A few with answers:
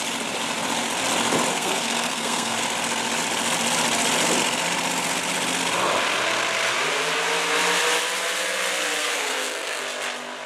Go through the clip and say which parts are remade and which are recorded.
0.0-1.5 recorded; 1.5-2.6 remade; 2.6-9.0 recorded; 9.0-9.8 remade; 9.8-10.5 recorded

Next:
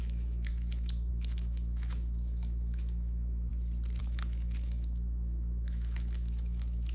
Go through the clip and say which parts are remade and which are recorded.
0.0-3.5 remade; 3.5-4.0 recorded; 4.0-6.9 remade

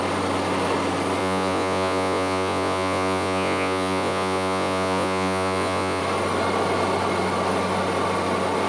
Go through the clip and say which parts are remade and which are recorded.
0.0-1.2 recorded; 1.2-6.0 remade; 6.0-8.7 recorded

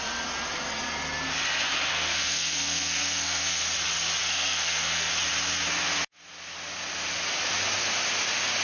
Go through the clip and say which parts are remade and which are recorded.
0.0-1.9 recorded; 1.9-3.6 remade; 3.6-4.2 recorded; 4.2-5.1 remade; 5.1-8.6 recorded

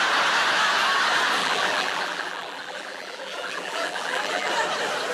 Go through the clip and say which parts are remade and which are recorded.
0.0-1.4 recorded; 1.4-4.5 remade; 4.5-5.1 recorded